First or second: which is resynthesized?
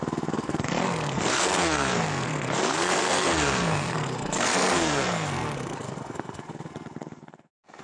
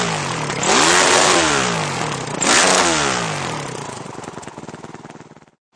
first